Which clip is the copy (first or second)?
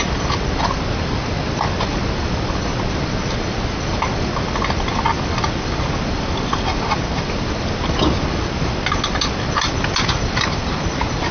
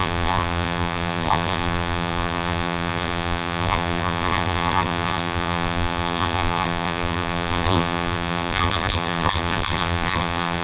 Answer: second